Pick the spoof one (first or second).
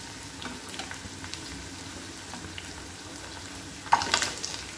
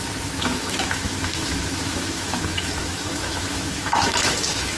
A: second